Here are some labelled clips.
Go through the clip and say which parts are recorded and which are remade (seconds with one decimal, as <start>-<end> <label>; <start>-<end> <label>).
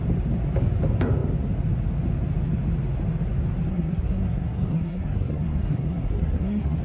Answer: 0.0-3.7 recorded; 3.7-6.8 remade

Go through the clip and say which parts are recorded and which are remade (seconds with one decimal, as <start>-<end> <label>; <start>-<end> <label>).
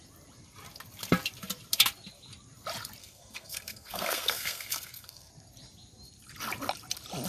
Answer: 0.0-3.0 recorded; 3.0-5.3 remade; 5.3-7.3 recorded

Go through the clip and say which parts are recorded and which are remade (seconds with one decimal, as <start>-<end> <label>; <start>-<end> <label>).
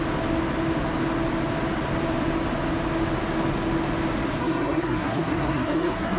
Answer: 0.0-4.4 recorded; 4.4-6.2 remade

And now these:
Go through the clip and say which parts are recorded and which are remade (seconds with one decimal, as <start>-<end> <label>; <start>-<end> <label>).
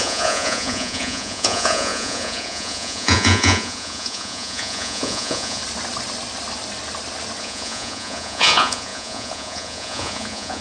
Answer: 0.0-5.6 remade; 5.6-7.4 recorded; 7.4-10.6 remade